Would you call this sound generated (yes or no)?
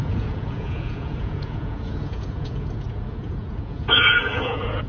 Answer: yes